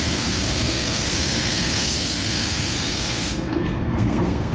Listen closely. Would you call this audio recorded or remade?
remade